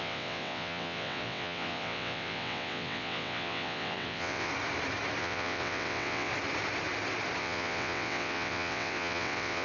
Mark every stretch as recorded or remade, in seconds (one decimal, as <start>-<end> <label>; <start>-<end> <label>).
0.0-4.5 remade; 4.5-5.2 recorded; 5.2-6.3 remade; 6.3-7.4 recorded; 7.4-9.6 remade